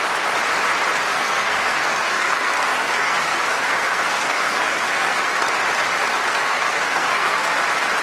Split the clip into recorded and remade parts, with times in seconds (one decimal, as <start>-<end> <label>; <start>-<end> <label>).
0.0-1.1 recorded; 1.1-5.5 remade; 5.5-6.1 recorded; 6.1-7.6 remade; 7.6-8.0 recorded